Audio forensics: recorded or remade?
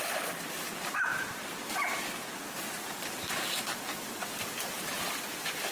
remade